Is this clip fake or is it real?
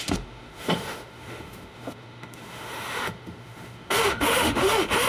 fake